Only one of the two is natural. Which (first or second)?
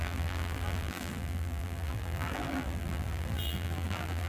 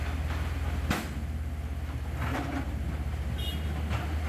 second